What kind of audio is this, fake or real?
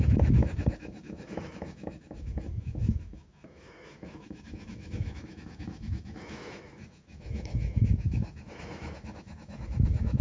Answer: fake